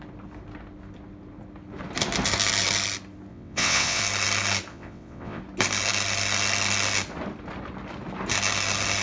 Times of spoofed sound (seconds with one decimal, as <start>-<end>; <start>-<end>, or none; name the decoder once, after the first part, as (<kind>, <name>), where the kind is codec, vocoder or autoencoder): 3.3-4.0 (vocoder, WaveNeXt); 4.7-5.4